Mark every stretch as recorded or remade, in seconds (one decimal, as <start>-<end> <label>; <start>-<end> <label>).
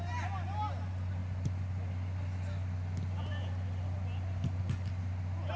0.0-5.6 recorded